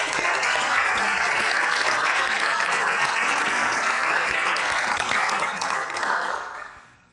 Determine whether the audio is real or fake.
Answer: fake